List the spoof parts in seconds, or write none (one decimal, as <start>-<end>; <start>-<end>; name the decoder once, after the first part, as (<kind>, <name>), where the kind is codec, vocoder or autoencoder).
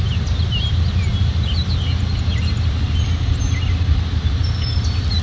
none